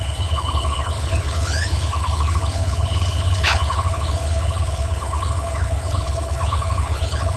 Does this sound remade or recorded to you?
remade